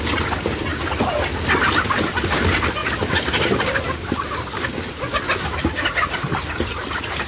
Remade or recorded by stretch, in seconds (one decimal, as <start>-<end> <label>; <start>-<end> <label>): 0.0-2.8 recorded; 2.8-5.1 remade; 5.1-6.3 recorded; 6.3-7.3 remade